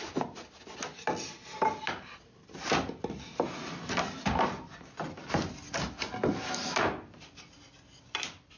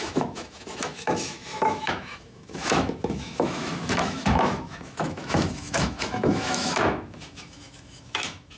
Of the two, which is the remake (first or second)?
second